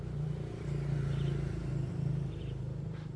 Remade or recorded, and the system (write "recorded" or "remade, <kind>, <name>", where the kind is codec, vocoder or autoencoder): remade, vocoder, BigVGAN v2